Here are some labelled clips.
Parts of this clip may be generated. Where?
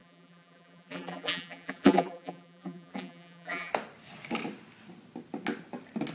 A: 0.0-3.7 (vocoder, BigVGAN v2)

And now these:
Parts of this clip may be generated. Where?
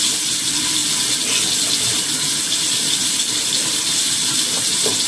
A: 0.0-0.8 (vocoder, BigVGAN v2); 1.8-5.1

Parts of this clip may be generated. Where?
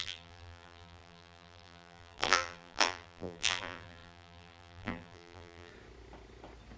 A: 0.0-5.7 (vocoder, BigVGAN v2)